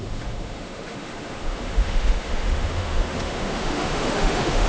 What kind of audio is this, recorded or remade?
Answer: remade